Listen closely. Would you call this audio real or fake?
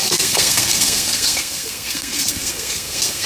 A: fake